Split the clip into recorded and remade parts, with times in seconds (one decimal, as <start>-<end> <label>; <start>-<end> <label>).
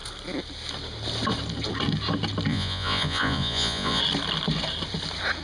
0.0-2.5 recorded; 2.5-4.0 remade; 4.0-5.4 recorded